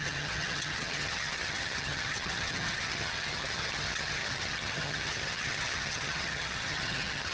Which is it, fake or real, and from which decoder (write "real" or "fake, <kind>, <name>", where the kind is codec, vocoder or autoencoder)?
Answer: fake, vocoder, HiFi-GAN